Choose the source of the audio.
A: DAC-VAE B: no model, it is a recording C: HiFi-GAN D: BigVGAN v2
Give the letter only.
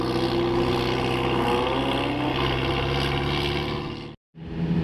B